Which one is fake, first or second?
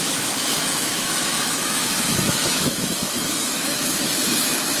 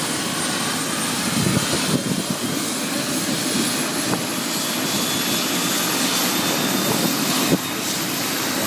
first